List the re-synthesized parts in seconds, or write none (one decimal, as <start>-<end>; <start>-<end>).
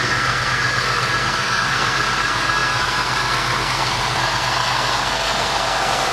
0.0-6.1